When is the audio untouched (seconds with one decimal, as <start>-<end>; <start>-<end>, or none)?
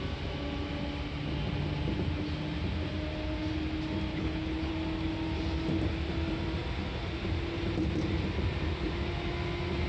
0.0-4.1; 4.7-9.9